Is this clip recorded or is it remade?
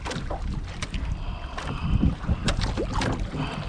recorded